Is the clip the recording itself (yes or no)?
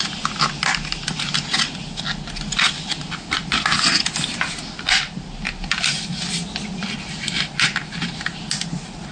yes